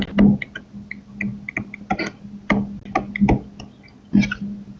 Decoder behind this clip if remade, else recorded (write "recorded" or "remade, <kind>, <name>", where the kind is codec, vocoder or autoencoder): recorded